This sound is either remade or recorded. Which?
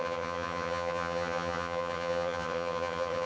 remade